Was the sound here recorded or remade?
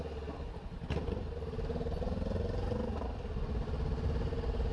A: recorded